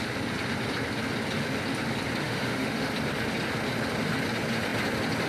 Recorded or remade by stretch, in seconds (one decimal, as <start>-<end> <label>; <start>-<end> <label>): 0.0-2.2 recorded; 2.2-2.9 remade; 2.9-5.3 recorded